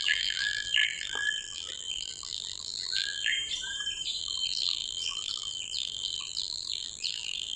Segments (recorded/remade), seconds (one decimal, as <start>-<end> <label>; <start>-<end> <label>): 0.0-3.3 remade; 3.3-4.2 recorded; 4.2-7.6 remade